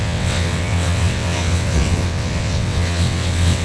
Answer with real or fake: fake